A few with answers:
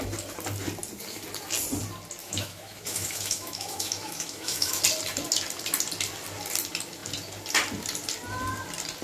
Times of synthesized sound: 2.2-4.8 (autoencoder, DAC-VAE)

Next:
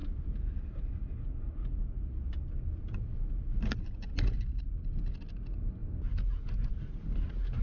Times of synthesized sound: none

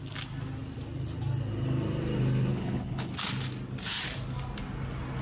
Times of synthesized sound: 2.5-3.1 (codec, HILCodec)

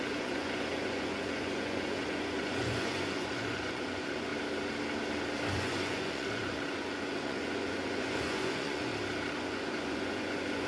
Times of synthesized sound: 0.0-4.3 (vocoder, Vocos); 5.5-8.9; 9.4-10.7